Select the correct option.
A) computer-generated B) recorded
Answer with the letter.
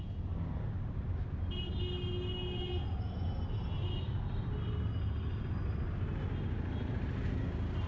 B